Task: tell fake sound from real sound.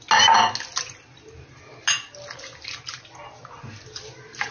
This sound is real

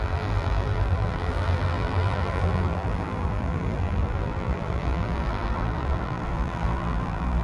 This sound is fake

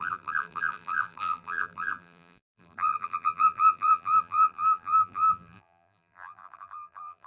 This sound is fake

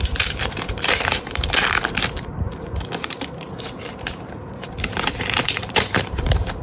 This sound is fake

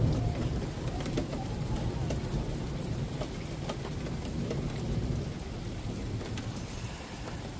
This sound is real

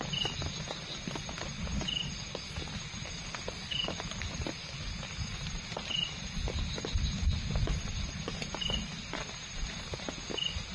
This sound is real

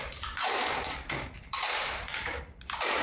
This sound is fake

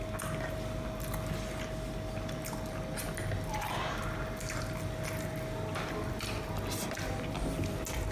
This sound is real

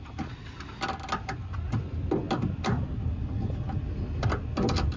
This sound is real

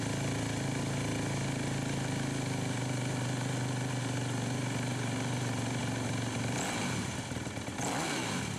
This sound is real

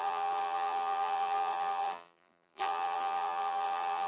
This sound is fake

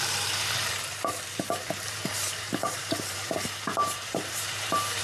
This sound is fake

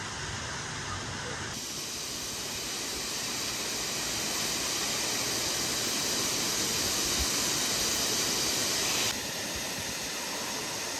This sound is real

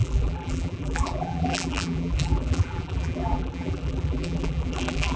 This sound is fake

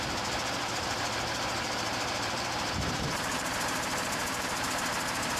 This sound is fake